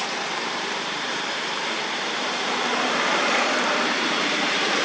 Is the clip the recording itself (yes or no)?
no